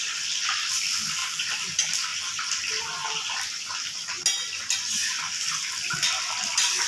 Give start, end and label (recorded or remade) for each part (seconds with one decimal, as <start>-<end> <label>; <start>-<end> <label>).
0.0-1.2 recorded; 1.2-1.7 remade; 1.7-2.1 recorded; 2.1-2.6 remade; 2.6-6.9 recorded